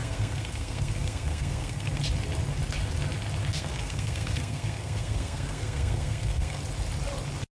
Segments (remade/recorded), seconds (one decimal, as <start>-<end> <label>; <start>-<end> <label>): 0.0-2.0 remade; 2.0-3.4 recorded; 3.4-6.6 remade; 6.6-7.6 recorded